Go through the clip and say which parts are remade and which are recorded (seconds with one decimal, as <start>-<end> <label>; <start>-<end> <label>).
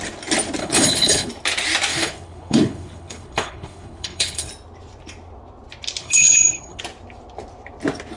0.0-0.6 recorded; 0.6-1.3 remade; 1.3-1.9 recorded; 1.9-4.5 remade; 4.5-6.0 recorded; 6.0-6.8 remade; 6.8-8.2 recorded